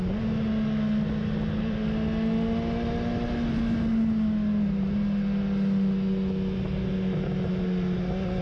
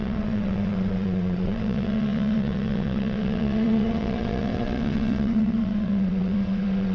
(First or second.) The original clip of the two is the first